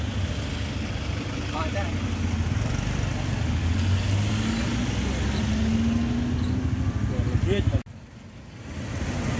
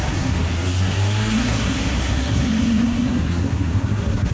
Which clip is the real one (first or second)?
first